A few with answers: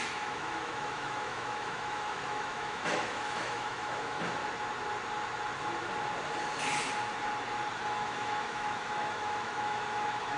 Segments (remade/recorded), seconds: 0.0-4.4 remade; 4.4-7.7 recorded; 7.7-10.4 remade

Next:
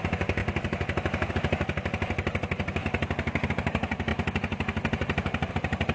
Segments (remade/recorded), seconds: 0.0-0.4 remade; 0.4-1.3 recorded; 1.3-2.8 remade; 2.8-3.5 recorded; 3.5-4.1 remade; 4.1-5.5 recorded; 5.5-5.9 remade

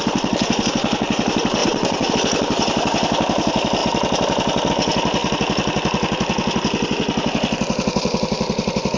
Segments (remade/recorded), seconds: 0.0-1.6 recorded; 1.6-2.1 remade; 2.1-9.0 recorded

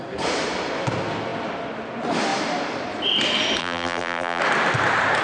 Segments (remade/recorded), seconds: 0.0-3.6 recorded; 3.6-4.4 remade; 4.4-5.2 recorded

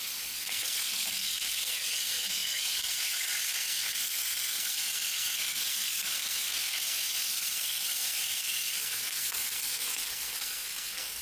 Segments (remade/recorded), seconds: 0.0-11.2 remade

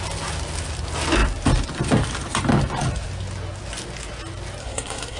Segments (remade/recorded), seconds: 0.0-4.6 recorded; 4.6-5.2 remade

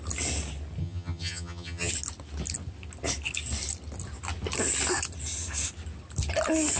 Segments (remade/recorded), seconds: 0.0-0.8 recorded; 0.8-1.9 remade; 1.9-6.8 recorded

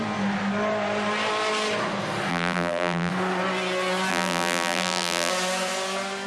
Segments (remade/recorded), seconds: 0.0-2.3 recorded; 2.3-3.1 remade; 3.1-4.1 recorded; 4.1-5.3 remade; 5.3-6.3 recorded